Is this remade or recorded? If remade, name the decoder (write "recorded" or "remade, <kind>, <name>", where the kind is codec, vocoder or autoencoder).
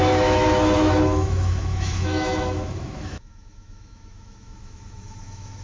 remade, autoencoder, DAC-VAE